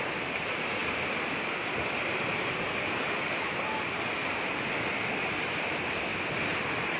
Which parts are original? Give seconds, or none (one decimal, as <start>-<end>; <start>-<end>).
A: 0.8-2.8; 4.2-5.2; 6.1-7.0